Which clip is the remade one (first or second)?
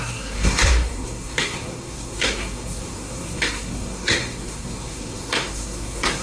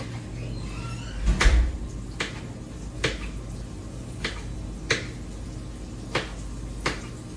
first